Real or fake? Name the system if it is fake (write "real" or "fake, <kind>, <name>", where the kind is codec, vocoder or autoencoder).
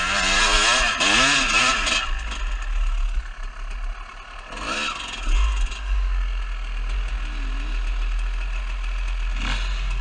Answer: real